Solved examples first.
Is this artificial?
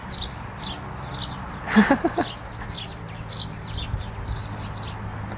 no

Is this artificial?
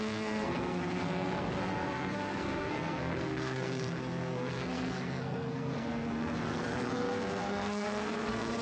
yes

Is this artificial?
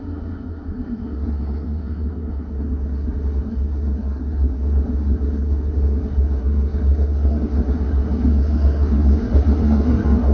yes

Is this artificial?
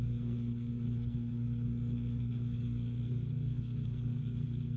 yes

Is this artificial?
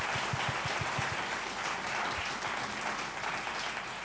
no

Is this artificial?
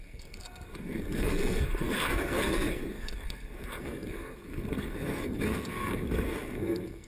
yes